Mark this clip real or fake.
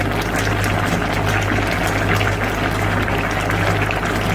real